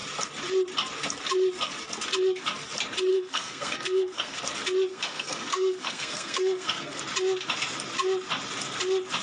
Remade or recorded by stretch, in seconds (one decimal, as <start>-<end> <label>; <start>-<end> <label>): 0.0-3.1 recorded; 3.1-4.4 remade; 4.4-4.9 recorded; 4.9-7.0 remade; 7.0-9.2 recorded